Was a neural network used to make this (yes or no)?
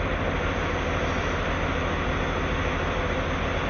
no